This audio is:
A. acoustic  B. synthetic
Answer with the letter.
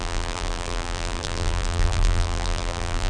B